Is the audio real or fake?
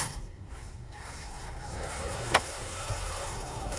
fake